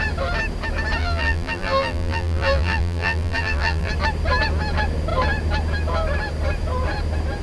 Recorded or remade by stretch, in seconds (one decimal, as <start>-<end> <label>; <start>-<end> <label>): 0.0-1.0 recorded; 1.0-3.9 remade; 3.9-7.4 recorded